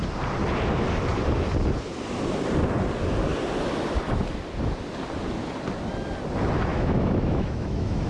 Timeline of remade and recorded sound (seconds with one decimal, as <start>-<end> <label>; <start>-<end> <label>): 0.0-6.7 recorded; 6.7-8.1 remade